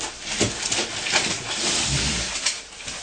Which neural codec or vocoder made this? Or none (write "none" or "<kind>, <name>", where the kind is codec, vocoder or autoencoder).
none